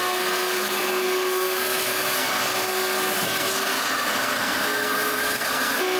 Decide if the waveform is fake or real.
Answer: fake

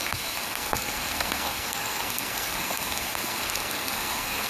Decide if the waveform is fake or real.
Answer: fake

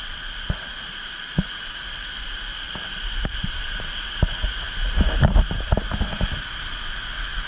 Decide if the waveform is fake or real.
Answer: real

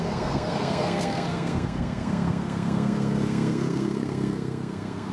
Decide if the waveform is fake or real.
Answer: fake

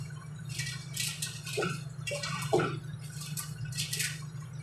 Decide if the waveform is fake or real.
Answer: real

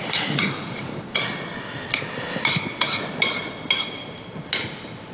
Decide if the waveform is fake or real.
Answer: real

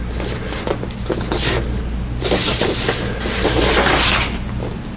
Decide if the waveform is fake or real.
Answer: real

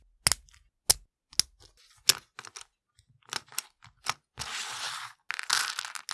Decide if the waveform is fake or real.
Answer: real